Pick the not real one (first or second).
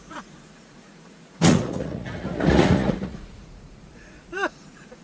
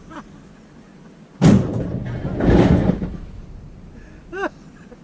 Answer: first